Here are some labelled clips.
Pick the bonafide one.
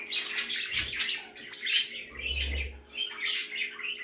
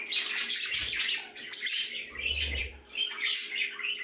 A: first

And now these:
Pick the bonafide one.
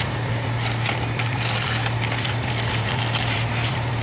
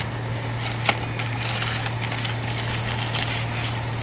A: second